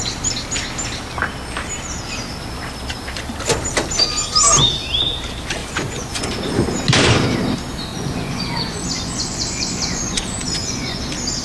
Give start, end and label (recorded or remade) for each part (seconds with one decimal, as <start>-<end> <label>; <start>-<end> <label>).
0.0-5.6 recorded; 5.6-6.3 remade; 6.3-7.9 recorded; 7.9-11.0 remade; 11.0-11.4 recorded